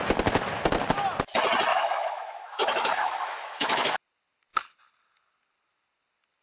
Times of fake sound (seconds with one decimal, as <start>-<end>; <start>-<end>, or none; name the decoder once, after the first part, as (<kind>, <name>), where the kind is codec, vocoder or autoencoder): 1.7-3.9 (autoencoder, DAC-VAE)